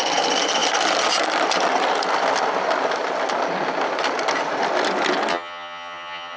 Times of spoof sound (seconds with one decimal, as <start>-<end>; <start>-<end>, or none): 5.3-6.4

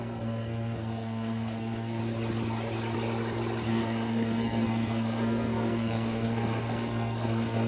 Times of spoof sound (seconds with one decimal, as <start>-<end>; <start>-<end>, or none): 0.0-2.0; 3.7-7.7